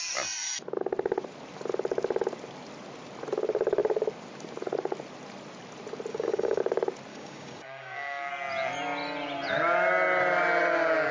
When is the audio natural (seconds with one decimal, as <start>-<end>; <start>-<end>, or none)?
0.0-6.1; 6.6-7.1; 8.3-11.1